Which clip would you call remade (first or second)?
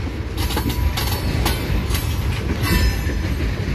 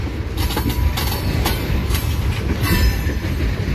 second